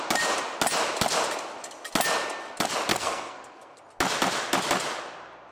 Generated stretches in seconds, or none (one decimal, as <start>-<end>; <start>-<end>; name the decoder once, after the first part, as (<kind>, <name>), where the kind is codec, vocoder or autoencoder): 2.9-3.8 (codec, SNAC)